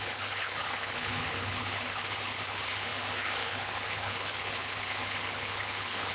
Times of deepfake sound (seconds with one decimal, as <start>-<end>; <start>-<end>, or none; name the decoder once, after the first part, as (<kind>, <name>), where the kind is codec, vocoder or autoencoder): 0.0-6.1 (codec, HILCodec)